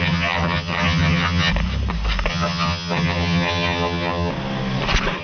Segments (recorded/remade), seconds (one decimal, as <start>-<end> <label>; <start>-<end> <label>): 0.0-1.5 remade; 1.5-2.3 recorded; 2.3-4.3 remade; 4.3-5.2 recorded